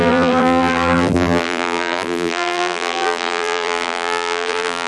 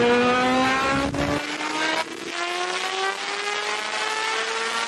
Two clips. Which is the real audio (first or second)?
second